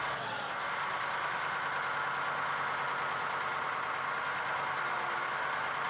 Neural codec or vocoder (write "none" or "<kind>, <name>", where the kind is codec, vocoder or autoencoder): none